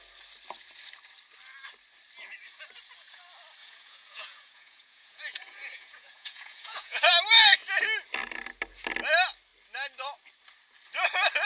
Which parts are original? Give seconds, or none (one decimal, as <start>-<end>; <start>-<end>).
0.0-3.6; 7.1-11.4